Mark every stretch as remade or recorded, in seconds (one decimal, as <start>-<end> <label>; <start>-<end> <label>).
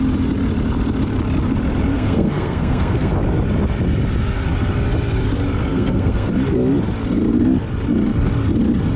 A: 0.0-1.9 recorded; 1.9-3.1 remade; 3.1-5.7 recorded; 5.7-6.3 remade; 6.3-9.0 recorded